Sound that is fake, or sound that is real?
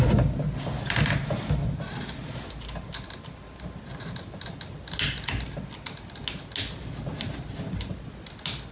real